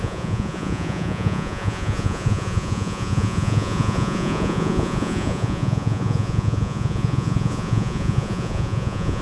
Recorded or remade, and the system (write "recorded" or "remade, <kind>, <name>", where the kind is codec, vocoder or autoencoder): remade, vocoder, Vocos